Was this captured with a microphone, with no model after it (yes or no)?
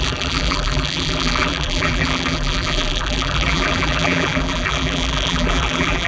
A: no